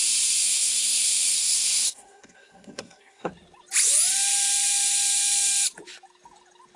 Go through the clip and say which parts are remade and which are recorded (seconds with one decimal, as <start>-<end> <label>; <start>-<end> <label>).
0.0-0.4 recorded; 0.4-3.3 remade; 3.3-6.8 recorded